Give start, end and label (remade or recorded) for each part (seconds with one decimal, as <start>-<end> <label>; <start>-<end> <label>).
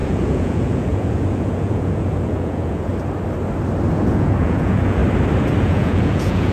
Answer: 0.0-2.9 remade; 2.9-3.9 recorded; 3.9-5.0 remade; 5.0-5.6 recorded; 5.6-6.5 remade